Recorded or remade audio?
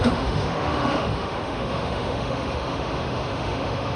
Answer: remade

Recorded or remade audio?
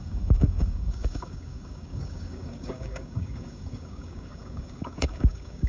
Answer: remade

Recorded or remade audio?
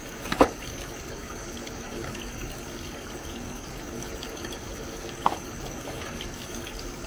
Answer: remade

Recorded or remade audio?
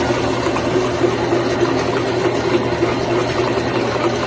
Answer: recorded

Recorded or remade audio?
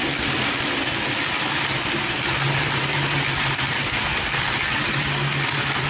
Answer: recorded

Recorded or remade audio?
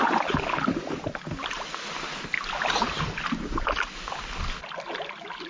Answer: recorded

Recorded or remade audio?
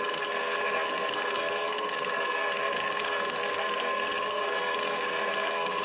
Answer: remade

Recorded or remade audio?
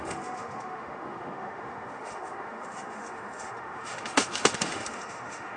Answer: remade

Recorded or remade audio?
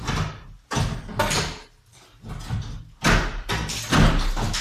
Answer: recorded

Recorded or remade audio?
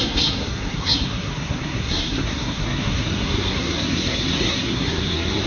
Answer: remade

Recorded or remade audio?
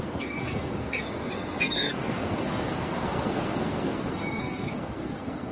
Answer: remade